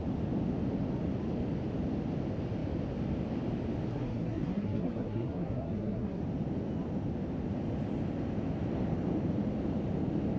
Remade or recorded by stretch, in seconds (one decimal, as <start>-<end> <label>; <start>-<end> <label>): 0.0-3.9 recorded; 3.9-6.2 remade; 6.2-10.4 recorded